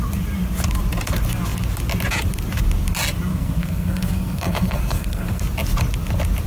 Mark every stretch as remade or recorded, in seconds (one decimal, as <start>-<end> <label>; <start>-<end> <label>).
0.0-3.3 recorded; 3.3-5.4 remade; 5.4-6.5 recorded